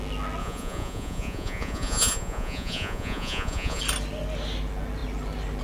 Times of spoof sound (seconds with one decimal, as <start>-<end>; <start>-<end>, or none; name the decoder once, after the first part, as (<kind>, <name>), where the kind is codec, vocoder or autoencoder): 0.4-3.8 (vocoder, Vocos)